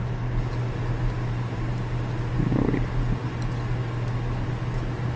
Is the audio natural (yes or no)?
yes